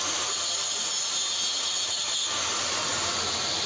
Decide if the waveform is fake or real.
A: real